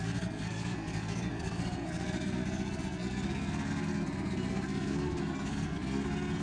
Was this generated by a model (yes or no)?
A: yes